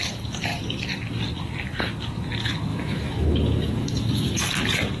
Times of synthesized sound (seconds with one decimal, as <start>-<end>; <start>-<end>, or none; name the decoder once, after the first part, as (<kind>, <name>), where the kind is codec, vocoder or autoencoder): 2.7-4.4 (autoencoder, DAC-VAE)